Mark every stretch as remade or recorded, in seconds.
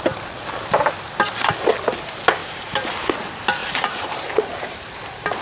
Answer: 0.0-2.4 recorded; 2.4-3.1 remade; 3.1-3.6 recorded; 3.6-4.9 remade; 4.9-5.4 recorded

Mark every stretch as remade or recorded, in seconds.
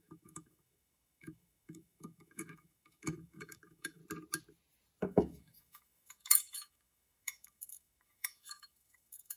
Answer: 0.0-4.0 remade; 4.0-5.0 recorded; 5.0-9.4 remade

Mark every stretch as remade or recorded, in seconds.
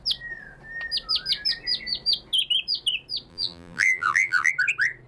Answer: 0.0-3.3 recorded; 3.3-4.5 remade; 4.5-5.1 recorded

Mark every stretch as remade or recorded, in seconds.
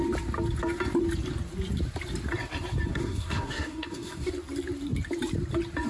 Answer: 0.0-2.9 recorded; 2.9-4.3 remade; 4.3-5.9 recorded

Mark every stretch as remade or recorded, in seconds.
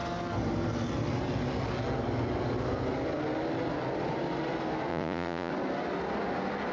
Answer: 0.0-4.9 recorded; 4.9-5.5 remade; 5.5-6.7 recorded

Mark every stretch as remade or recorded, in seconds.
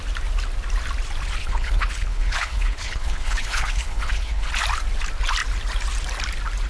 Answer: 0.0-1.4 recorded; 1.4-4.5 remade; 4.5-6.7 recorded